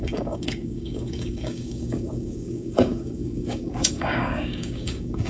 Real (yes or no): no